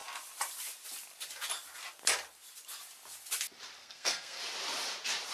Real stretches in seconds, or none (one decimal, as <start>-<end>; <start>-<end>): 0.0-3.8; 4.4-5.3